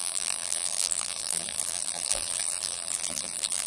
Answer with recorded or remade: remade